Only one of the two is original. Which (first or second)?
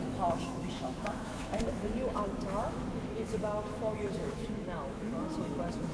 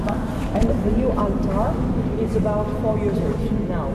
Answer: second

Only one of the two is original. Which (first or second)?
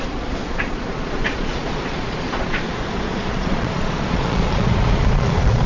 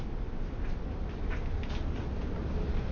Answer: second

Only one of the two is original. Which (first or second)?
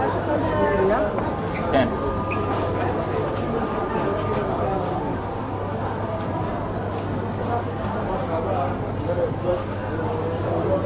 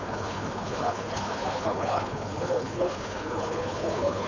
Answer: first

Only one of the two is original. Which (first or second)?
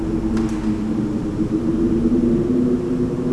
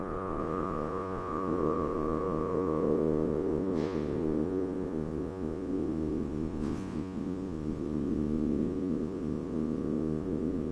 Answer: first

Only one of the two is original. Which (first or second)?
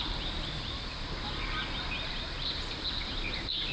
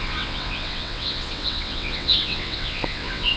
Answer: first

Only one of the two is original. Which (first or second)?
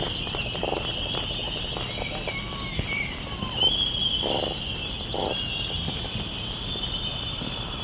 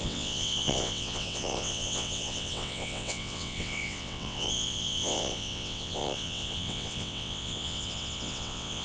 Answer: first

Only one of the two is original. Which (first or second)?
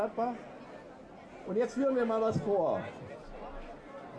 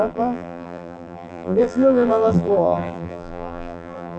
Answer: first